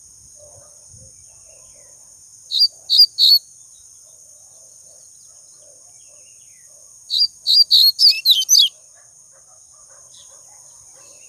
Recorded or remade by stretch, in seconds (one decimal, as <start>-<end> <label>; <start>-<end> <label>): 0.0-11.3 recorded